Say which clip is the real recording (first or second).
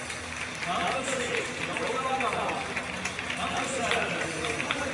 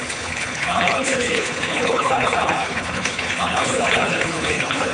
first